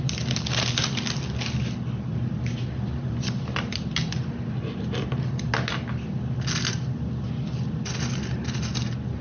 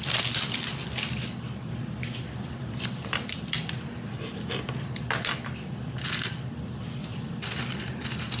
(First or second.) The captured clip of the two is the first